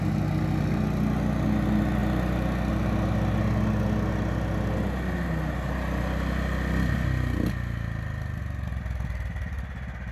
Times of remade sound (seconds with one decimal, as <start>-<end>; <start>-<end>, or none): none